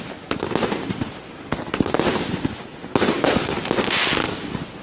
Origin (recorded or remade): recorded